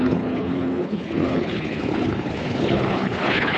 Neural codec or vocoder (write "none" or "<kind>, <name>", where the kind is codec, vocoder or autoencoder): codec, HILCodec